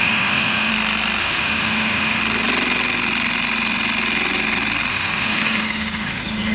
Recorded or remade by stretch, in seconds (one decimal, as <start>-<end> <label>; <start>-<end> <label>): 0.0-0.7 remade; 0.7-1.2 recorded; 1.2-2.2 remade; 2.2-4.9 recorded; 4.9-6.5 remade